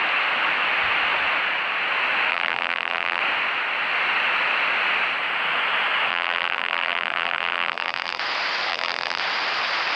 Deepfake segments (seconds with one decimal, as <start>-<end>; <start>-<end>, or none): 2.3-3.2; 6.1-8.2; 8.7-9.2